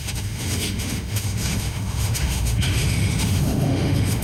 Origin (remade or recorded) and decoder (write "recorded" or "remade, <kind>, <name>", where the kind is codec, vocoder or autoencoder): remade, autoencoder, DAC-VAE